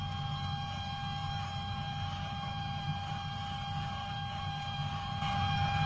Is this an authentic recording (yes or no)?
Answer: no